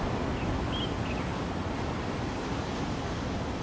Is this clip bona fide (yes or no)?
yes